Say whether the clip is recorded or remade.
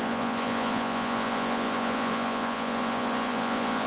remade